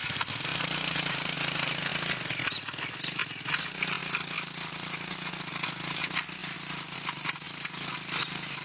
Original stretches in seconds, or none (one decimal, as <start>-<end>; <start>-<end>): 0.0-8.6